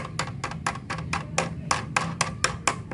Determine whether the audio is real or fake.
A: real